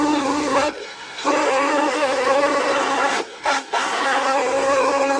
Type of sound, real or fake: fake